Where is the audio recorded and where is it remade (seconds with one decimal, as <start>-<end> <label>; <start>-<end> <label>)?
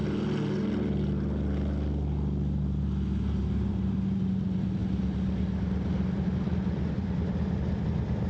0.0-3.4 recorded; 3.4-4.8 remade; 4.8-6.1 recorded; 6.1-8.3 remade